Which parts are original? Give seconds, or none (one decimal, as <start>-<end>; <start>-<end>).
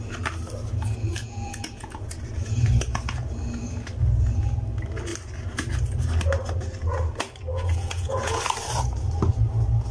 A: 0.0-1.2; 2.1-7.5; 8.4-9.9